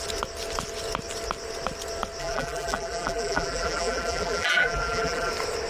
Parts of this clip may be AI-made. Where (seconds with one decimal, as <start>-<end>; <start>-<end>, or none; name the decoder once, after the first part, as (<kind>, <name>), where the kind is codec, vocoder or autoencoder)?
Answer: 2.2-5.3 (vocoder, BigVGAN v2)